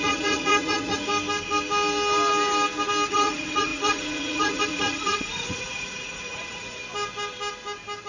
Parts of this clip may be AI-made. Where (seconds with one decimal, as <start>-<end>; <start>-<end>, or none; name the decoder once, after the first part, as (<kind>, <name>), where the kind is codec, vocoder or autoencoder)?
0.0-1.1 (vocoder, Vocos); 3.1-6.8

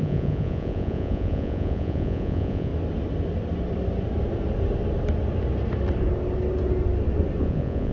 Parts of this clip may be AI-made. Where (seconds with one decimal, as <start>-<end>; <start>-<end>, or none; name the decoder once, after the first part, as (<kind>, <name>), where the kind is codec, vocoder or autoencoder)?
0.0-2.7 (vocoder, Vocos); 7.4-7.9

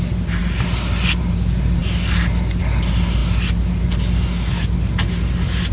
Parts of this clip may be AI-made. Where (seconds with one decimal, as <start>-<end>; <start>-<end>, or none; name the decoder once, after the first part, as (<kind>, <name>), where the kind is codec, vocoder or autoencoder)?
none